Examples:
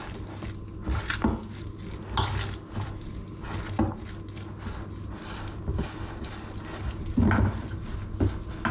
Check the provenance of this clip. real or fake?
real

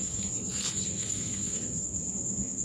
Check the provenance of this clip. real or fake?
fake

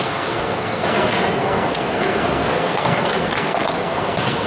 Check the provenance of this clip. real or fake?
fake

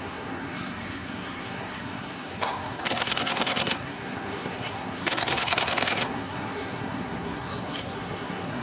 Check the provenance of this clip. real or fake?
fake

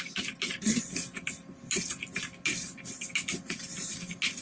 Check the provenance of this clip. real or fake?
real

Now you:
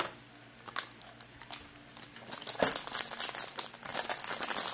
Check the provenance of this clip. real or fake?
real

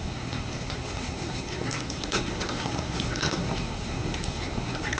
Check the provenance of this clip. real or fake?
fake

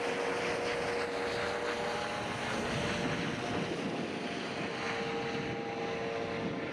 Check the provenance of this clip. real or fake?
real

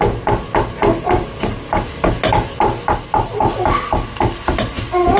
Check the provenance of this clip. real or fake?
real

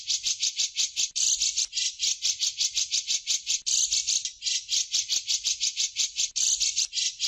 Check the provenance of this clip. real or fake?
real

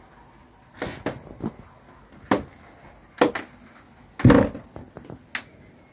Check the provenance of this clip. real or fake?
real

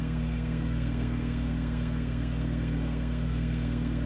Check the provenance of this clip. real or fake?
fake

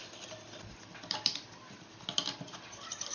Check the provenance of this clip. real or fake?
real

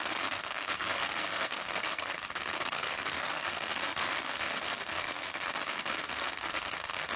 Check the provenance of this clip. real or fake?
fake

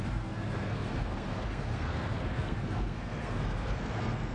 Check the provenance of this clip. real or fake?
fake